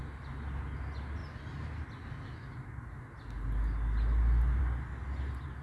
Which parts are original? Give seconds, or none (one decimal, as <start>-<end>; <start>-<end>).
0.0-5.6